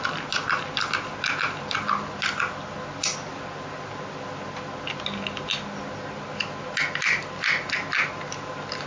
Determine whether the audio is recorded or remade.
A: recorded